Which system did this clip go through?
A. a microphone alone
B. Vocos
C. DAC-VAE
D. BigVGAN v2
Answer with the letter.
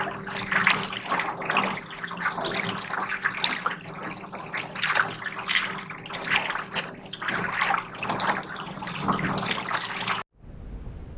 A